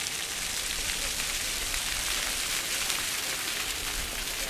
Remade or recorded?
remade